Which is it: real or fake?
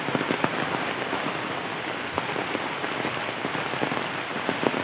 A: real